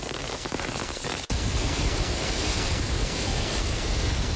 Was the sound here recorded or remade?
remade